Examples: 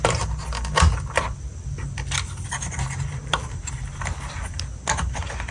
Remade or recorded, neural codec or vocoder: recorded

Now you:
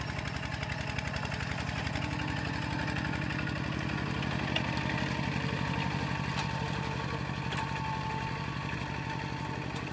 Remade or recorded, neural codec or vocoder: recorded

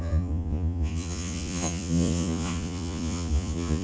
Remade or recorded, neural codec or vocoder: remade, vocoder, Vocos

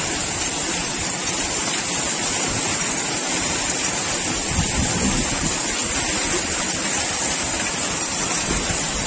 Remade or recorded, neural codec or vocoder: recorded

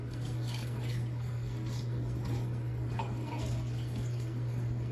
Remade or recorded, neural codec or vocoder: remade, codec, SNAC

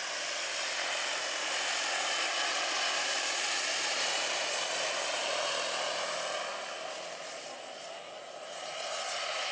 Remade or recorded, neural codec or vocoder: recorded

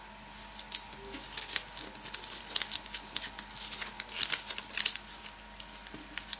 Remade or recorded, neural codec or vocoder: recorded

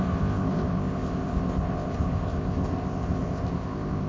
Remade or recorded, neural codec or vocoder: remade, codec, ZipCodec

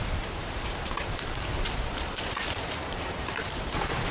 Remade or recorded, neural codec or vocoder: remade, vocoder, BigVGAN v2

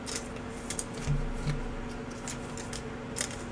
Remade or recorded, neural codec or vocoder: recorded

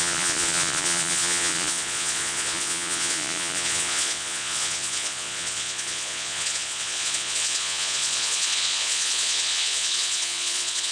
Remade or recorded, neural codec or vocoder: remade, vocoder, Vocos